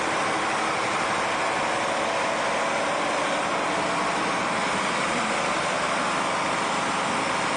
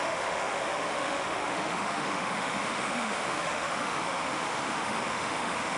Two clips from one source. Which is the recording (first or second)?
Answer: first